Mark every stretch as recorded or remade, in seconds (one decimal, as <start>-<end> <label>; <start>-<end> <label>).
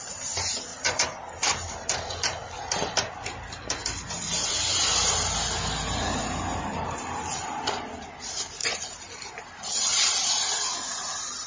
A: 0.0-0.7 recorded; 0.7-1.7 remade; 1.7-8.6 recorded; 8.6-9.4 remade; 9.4-11.5 recorded